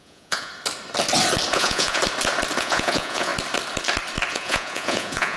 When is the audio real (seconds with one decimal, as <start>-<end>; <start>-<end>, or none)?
0.5-1.5; 2.0-2.6; 3.3-4.3